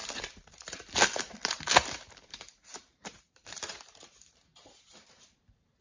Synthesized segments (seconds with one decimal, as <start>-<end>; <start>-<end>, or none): 0.0-5.8